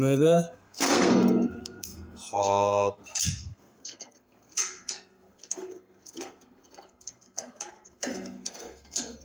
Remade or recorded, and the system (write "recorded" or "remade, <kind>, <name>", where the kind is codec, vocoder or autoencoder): remade, codec, SNAC